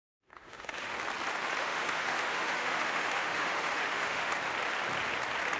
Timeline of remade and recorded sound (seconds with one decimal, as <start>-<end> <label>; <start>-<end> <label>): 0.0-1.0 remade; 1.0-1.6 recorded; 1.6-4.3 remade; 4.3-5.6 recorded